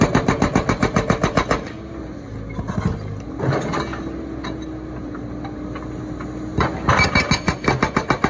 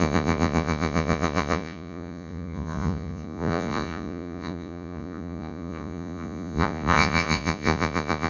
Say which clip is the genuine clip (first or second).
first